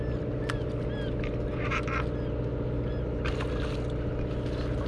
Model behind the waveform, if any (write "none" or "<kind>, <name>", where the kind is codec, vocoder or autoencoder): none